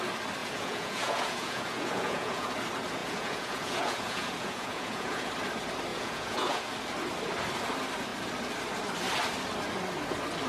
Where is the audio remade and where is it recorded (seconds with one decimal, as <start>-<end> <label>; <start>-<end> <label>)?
0.0-0.4 recorded; 0.4-2.5 remade; 2.5-3.0 recorded; 3.0-5.3 remade; 5.3-5.9 recorded; 5.9-6.7 remade; 6.7-10.5 recorded